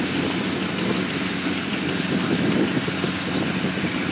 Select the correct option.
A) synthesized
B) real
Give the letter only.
B